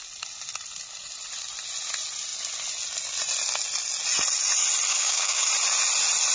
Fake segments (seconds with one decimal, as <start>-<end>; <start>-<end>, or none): 4.9-5.5

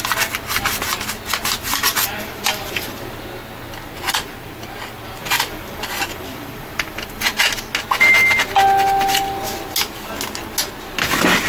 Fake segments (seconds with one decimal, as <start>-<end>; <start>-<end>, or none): 1.6-3.0; 5.2-7.4

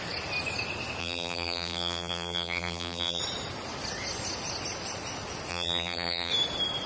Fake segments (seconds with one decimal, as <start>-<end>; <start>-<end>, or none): 1.0-3.2; 5.5-6.3

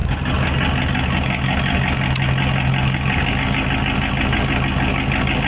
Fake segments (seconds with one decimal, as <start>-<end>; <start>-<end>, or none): none

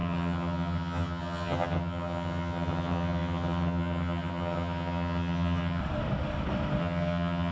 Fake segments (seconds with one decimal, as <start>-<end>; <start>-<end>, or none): 0.0-5.8; 6.8-7.5

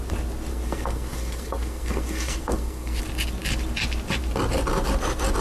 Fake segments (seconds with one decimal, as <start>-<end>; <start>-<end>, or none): 0.5-3.0